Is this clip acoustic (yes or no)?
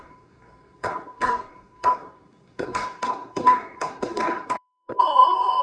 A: no